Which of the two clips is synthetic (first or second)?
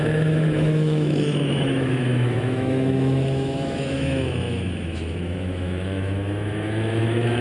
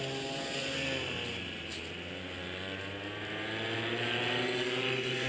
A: first